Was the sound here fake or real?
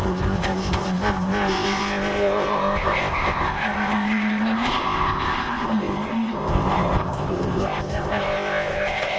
fake